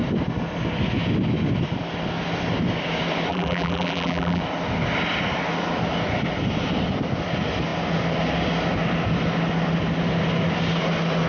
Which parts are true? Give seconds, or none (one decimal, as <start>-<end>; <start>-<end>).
0.0-3.3; 4.4-11.3